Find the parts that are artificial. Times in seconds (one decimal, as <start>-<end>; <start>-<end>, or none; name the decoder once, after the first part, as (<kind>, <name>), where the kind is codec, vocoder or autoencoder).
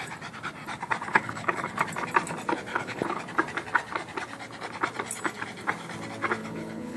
1.1-1.7 (codec, HILCodec); 2.7-3.2; 6.4-7.0